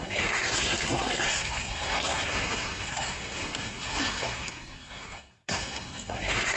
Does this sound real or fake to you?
fake